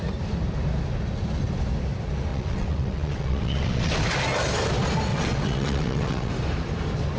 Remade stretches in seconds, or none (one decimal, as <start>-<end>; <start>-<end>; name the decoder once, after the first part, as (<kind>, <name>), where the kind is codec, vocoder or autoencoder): 2.3-3.9 (vocoder, WaveNeXt); 5.1-6.3